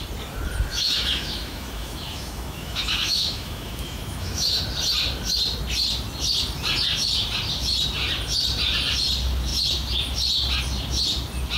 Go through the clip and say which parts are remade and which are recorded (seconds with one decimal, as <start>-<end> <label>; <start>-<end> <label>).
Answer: 0.0-0.7 recorded; 0.7-4.6 remade; 4.6-11.6 recorded